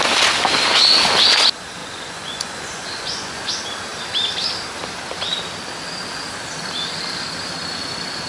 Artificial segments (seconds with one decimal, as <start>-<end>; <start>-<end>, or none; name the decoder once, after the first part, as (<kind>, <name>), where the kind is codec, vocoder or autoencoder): 1.8-3.5 (vocoder, Vocos)

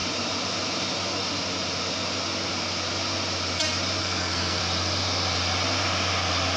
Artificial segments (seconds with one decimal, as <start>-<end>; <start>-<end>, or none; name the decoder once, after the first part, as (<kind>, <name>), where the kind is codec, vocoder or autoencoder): 4.0-4.6 (codec, SNAC)

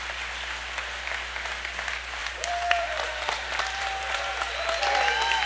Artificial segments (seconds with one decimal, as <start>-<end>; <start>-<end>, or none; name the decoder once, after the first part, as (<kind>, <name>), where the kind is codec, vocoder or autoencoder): 2.2-4.8 (vocoder, BigVGAN v2)

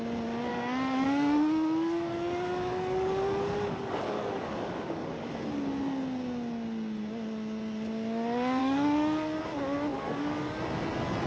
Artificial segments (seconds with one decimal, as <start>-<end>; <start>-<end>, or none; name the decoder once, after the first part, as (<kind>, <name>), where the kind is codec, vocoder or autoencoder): 0.5-5.3 (codec, DAC); 8.6-9.4; 9.9-10.6

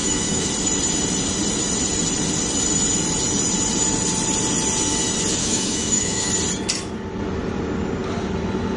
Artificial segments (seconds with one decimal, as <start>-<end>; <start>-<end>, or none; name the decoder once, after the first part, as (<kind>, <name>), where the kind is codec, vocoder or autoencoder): 0.0-0.5 (autoencoder, DAC-VAE); 5.4-6.3